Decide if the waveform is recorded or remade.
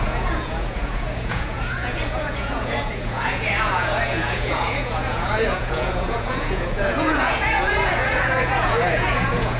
remade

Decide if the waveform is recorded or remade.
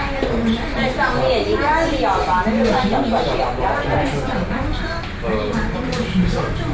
recorded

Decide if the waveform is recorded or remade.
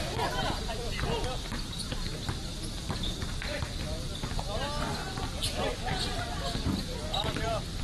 recorded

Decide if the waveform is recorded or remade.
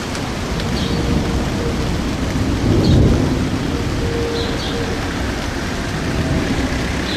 recorded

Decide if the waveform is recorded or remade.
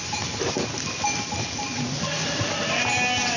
recorded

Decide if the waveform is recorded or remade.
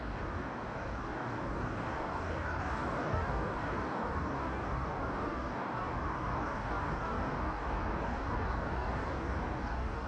remade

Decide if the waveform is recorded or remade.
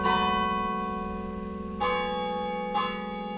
recorded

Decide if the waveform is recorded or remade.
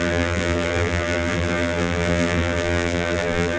remade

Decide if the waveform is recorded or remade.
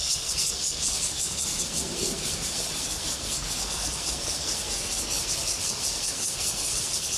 remade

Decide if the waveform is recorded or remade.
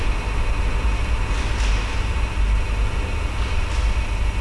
recorded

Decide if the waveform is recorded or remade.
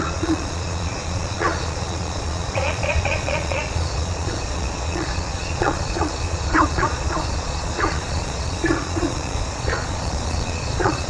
remade